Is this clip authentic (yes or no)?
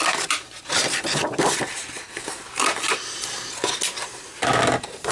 no